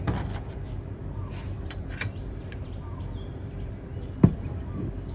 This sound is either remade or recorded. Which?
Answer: remade